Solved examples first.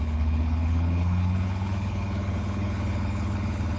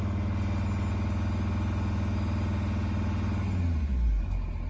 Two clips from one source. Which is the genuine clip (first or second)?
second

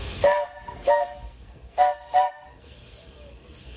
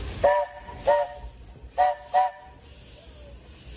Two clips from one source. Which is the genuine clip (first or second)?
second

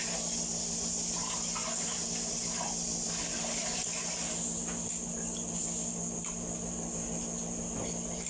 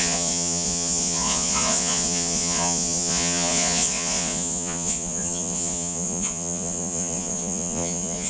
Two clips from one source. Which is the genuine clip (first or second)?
first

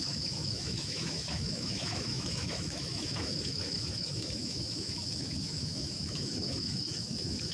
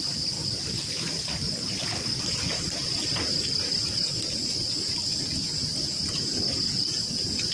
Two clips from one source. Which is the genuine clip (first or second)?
second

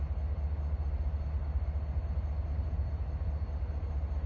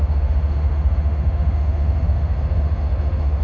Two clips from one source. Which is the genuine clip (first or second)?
first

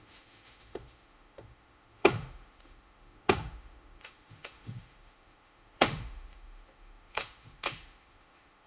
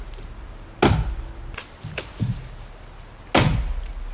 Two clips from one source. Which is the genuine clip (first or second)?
second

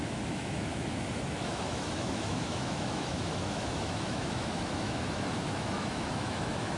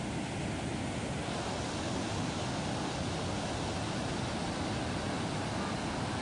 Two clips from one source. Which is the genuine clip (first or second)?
second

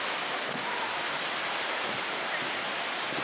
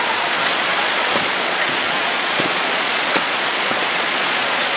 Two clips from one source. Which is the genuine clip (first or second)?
first